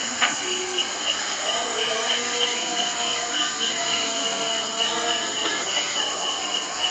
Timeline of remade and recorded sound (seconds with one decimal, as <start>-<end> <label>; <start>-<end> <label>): 0.0-6.9 remade